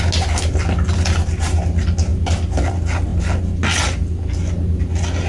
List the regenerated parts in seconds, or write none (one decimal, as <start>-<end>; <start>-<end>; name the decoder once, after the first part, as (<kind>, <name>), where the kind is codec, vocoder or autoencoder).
none

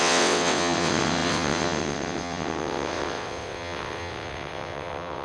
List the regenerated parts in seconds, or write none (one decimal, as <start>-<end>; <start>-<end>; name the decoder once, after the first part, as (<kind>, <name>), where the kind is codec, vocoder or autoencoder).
0.0-5.2 (vocoder, WaveNeXt)

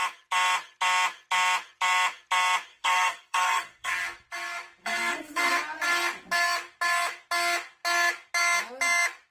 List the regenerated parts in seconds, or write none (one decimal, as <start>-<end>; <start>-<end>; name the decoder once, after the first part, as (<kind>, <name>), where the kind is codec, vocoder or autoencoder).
2.7-3.9 (codec, SNAC); 4.8-5.5

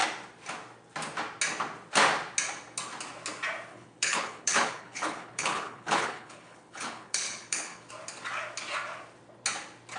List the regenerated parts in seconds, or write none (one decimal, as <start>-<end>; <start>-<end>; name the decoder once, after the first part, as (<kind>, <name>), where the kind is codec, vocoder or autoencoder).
3.7-7.9 (codec, HILCodec)

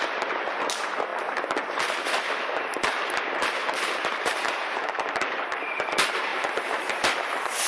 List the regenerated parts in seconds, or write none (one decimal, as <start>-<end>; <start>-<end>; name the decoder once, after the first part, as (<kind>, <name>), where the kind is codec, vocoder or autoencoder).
2.7-5.6 (vocoder, BigVGAN v2); 6.3-6.8

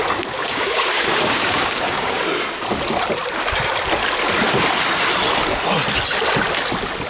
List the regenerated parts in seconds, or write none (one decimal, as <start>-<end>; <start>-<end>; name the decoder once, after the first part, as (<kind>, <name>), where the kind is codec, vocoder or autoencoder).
0.4-2.2 (codec, DAC)

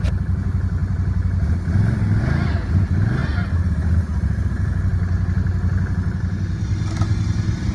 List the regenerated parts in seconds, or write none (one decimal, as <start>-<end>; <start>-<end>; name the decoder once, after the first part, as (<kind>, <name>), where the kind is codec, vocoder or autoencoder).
none

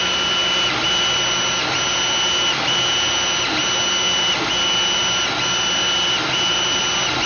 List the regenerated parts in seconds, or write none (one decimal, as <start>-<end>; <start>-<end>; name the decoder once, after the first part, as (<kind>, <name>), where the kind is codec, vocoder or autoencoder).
none